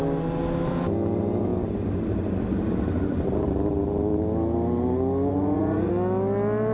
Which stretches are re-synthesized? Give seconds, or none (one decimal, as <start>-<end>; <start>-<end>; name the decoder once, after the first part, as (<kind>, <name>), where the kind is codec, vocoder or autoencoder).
5.3-5.9 (vocoder, Vocos)